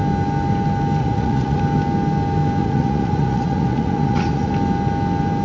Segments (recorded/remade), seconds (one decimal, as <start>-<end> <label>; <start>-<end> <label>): 0.0-1.0 recorded; 1.0-1.6 remade; 1.6-2.6 recorded; 2.6-4.5 remade; 4.5-5.4 recorded